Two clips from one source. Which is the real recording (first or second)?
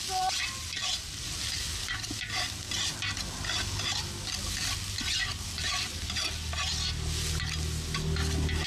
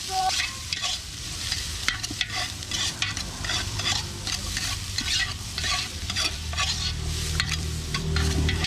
first